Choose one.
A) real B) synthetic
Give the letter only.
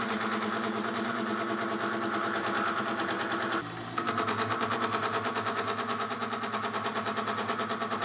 A